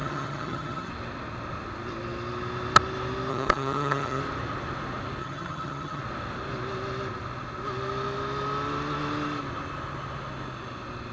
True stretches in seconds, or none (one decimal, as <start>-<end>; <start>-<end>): 0.9-3.3; 4.2-5.2; 6.0-11.1